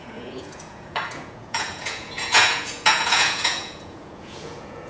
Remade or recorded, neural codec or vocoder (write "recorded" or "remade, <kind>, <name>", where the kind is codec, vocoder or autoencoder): remade, vocoder, Vocos